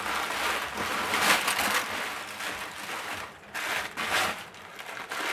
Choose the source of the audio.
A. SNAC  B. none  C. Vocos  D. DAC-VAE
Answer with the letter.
B